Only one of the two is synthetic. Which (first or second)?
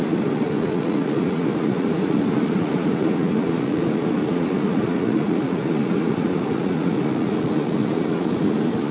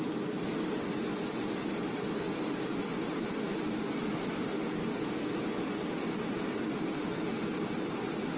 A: first